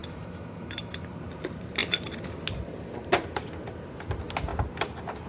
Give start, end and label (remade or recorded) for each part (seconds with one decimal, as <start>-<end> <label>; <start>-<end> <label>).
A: 0.0-1.1 remade; 1.1-5.3 recorded